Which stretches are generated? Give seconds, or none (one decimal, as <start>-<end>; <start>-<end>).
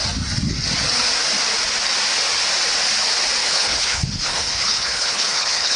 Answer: 3.4-5.8